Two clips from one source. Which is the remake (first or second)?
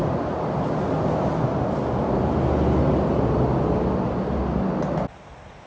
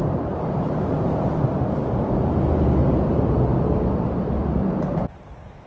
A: second